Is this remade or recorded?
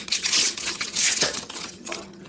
remade